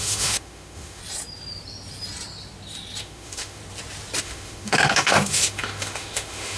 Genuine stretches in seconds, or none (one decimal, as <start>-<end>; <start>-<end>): 1.0-3.0; 3.6-4.2